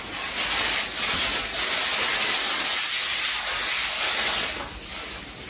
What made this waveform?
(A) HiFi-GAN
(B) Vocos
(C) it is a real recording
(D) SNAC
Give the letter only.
C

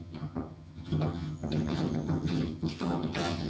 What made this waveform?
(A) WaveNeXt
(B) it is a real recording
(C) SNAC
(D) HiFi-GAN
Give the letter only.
D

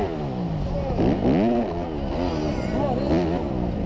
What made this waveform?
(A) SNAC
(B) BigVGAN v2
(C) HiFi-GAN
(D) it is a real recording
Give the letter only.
D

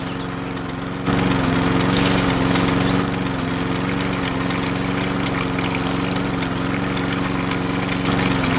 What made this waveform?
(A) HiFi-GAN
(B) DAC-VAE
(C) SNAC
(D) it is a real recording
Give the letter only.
D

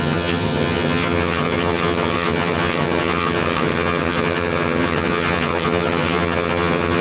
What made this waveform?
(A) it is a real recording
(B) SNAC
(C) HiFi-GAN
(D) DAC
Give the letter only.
C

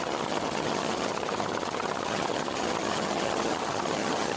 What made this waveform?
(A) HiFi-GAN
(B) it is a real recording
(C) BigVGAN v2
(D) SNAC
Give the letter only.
A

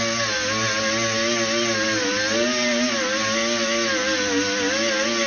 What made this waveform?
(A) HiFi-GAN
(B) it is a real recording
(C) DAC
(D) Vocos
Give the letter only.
B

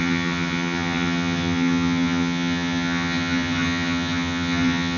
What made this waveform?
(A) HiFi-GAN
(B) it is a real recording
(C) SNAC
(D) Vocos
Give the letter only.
A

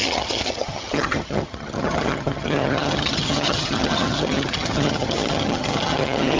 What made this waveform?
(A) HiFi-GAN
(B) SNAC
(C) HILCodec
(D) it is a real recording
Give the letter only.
A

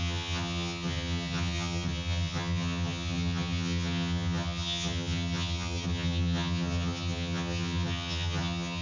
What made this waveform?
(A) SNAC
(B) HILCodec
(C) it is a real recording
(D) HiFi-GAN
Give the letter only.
D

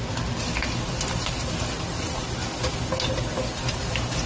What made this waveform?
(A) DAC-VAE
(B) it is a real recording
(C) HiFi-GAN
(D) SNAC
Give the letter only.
B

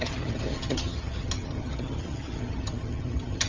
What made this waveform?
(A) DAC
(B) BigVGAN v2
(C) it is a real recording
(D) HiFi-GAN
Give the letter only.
D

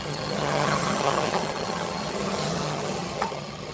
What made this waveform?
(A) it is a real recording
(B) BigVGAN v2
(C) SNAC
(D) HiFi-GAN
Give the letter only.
D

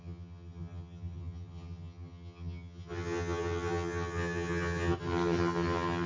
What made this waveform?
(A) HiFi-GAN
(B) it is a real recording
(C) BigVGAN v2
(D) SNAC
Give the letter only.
A